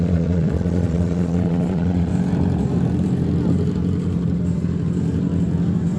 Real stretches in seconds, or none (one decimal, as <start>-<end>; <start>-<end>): 2.1-6.0

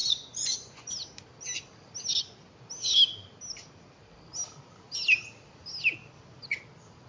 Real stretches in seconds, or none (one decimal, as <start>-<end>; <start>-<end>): 0.9-7.1

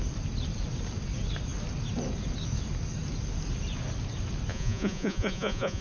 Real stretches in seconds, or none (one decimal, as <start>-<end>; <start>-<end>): 0.0-4.5

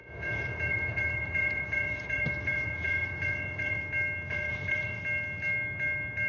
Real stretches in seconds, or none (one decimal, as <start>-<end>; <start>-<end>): 3.8-4.3; 5.0-6.3

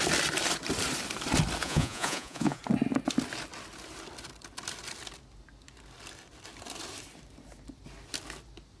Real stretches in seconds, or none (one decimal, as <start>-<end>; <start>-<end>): 0.0-1.6; 2.6-8.8

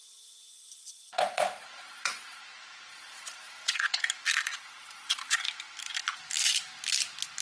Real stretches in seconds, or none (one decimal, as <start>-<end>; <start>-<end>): 0.0-0.5; 2.4-2.9; 4.0-4.5; 5.4-7.4

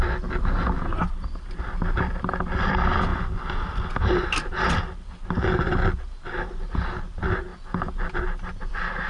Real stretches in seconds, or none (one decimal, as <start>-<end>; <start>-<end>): 0.0-9.1

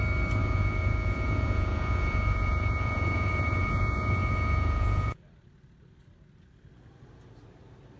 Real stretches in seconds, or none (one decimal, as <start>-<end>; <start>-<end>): 0.0-0.4; 5.2-8.0